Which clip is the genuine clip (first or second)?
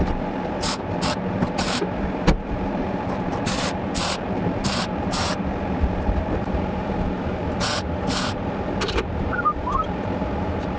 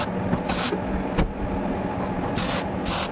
second